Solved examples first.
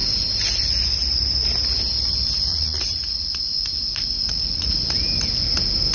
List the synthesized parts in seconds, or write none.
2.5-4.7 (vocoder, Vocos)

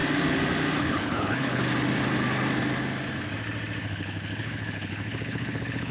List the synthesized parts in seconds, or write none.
0.8-1.6 (codec, HILCodec); 3.8-5.9

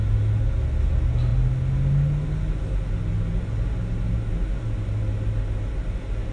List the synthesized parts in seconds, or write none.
none

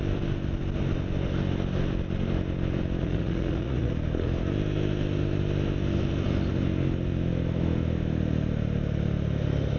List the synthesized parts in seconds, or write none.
3.0-3.9 (vocoder, Vocos)